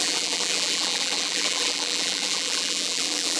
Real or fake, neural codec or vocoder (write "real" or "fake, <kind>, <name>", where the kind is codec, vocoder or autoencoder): fake, vocoder, BigVGAN v2